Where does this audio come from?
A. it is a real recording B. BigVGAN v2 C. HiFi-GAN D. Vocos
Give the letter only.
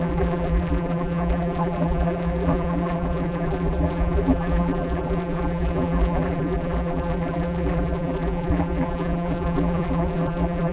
B